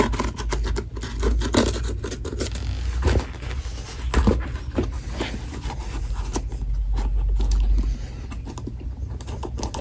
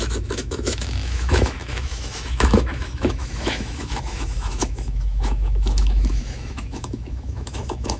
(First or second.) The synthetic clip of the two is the second